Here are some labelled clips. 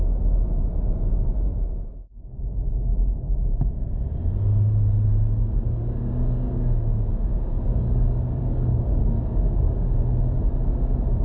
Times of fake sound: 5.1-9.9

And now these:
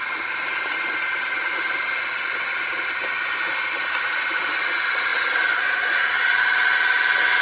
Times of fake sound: none